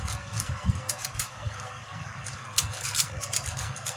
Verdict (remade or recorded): remade